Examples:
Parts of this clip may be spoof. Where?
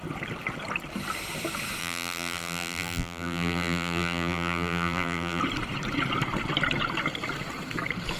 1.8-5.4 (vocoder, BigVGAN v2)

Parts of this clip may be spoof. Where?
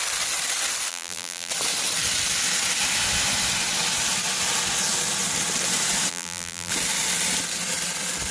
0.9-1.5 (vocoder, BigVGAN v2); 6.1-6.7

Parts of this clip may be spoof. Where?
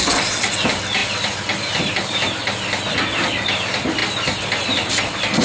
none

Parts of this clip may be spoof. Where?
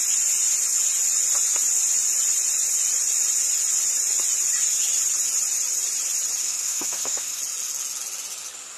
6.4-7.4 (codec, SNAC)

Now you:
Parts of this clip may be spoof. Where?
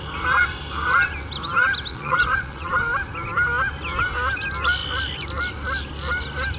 1.9-2.7 (vocoder, Vocos)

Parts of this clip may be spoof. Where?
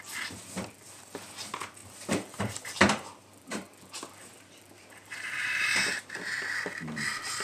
1.8-6.2 (vocoder, BigVGAN v2)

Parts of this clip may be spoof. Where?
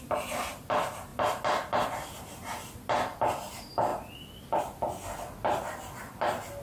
none